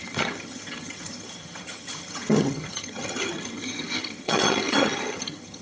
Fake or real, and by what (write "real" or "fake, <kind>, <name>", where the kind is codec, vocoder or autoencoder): fake, vocoder, HiFi-GAN